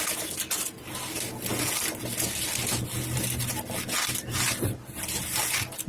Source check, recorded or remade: recorded